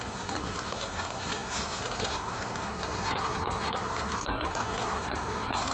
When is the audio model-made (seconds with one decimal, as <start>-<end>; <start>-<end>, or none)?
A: 0.0-5.7